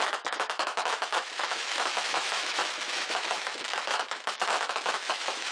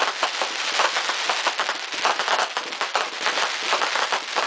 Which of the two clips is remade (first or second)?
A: first